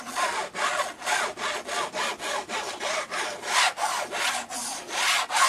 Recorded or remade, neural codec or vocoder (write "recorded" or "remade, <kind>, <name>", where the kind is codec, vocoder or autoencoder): recorded